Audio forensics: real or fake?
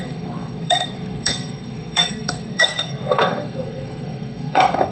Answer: fake